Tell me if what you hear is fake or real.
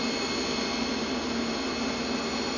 real